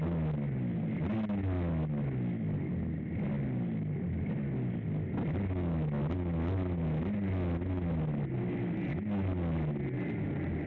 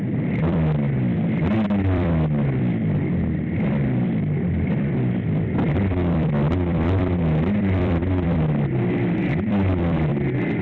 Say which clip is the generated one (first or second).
second